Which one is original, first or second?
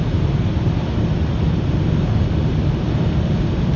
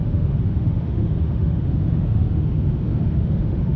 first